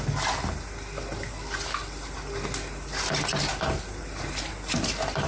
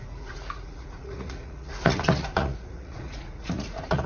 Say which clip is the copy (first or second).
second